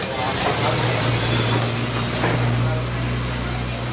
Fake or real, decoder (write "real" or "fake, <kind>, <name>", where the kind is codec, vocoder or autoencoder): real